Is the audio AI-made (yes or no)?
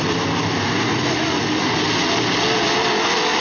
no